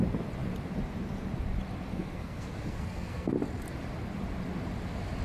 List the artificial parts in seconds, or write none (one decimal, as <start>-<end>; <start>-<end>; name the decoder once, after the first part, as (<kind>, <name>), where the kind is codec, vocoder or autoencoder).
1.9-3.3 (codec, SNAC)